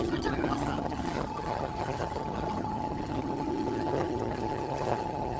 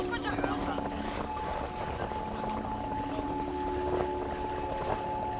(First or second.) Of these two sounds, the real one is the second